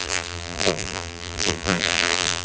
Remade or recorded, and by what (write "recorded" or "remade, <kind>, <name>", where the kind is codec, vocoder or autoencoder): remade, vocoder, BigVGAN v2